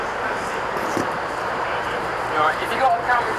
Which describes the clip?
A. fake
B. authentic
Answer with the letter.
A